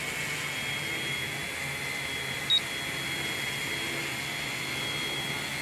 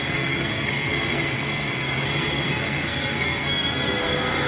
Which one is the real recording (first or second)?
first